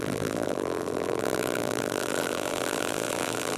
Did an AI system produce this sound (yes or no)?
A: yes